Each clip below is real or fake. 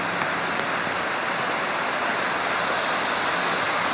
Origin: real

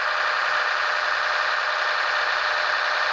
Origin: real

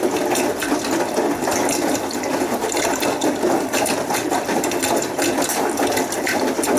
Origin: real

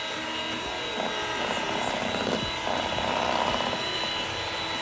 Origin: real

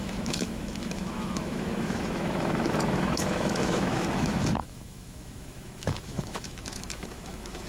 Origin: fake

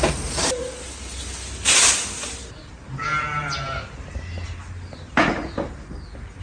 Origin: real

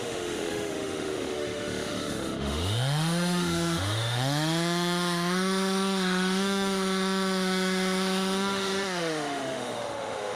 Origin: fake